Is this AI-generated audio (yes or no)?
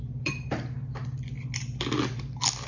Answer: no